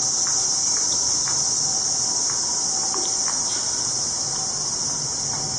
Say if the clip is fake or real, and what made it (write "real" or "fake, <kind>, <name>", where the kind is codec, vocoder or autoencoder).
real